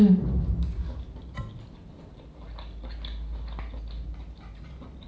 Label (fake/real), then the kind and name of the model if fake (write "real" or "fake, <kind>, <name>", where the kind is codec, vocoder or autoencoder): real